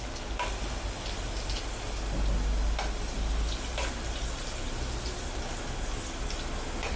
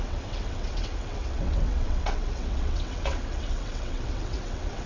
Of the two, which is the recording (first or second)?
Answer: first